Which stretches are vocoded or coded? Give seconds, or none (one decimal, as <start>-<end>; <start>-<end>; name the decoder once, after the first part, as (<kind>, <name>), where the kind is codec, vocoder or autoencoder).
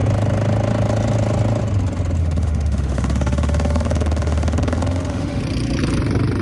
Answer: 2.2-5.4 (autoencoder, DAC-VAE)